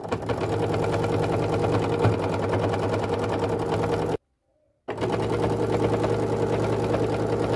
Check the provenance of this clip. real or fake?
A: real